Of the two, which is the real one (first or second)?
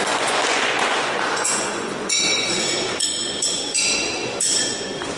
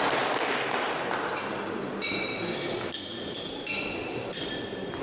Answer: second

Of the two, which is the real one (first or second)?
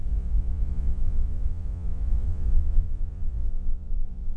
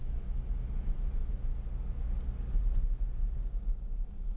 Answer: second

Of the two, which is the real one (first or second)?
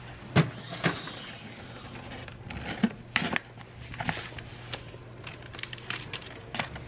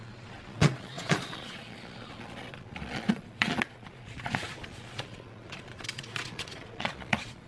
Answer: first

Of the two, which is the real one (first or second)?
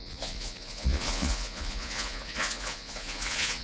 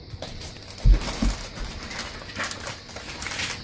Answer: second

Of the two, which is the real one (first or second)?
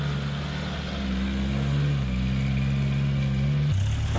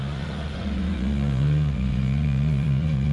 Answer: first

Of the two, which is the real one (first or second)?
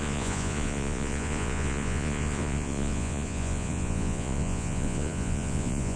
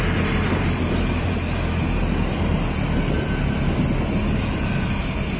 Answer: second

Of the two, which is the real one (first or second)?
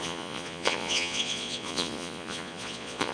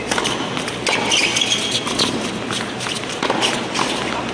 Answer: second